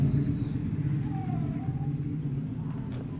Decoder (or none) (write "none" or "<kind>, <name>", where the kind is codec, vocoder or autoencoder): none